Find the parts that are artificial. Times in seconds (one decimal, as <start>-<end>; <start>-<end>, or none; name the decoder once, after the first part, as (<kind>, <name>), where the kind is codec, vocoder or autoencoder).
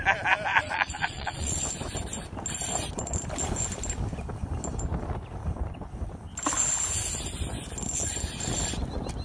0.5-1.6 (vocoder, Vocos)